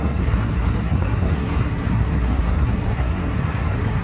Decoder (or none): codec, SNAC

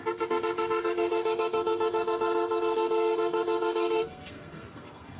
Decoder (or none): codec, SNAC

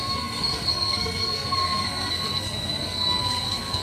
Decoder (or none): codec, SNAC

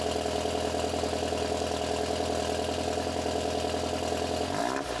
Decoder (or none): none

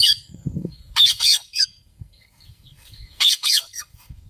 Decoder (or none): codec, SNAC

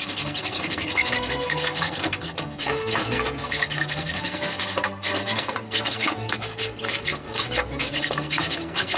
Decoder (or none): codec, SNAC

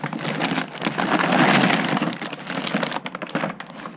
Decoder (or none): none